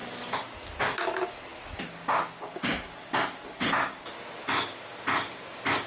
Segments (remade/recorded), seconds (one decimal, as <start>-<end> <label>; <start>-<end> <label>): 0.0-5.9 recorded